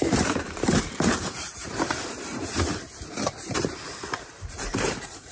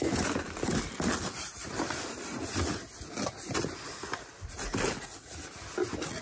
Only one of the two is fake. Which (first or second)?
first